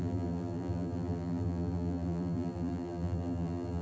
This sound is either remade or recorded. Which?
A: remade